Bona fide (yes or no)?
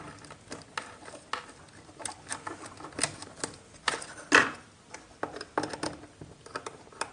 yes